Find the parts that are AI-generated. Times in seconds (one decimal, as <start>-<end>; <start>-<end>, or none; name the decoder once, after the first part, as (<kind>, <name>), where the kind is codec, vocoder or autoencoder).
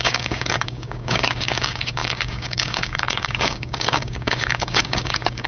0.0-5.5 (codec, DAC)